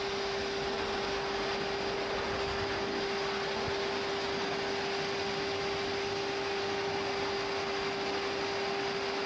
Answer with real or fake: real